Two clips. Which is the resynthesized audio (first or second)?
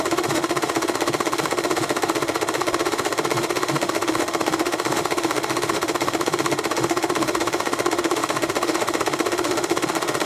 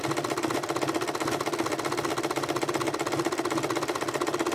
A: first